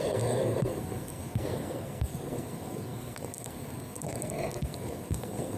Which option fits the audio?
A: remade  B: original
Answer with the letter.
A